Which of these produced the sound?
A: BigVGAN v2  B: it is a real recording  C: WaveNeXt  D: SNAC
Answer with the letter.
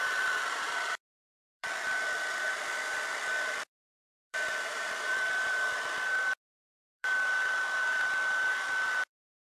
A